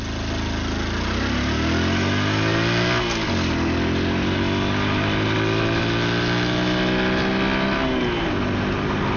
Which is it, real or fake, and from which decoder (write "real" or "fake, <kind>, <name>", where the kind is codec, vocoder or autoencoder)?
real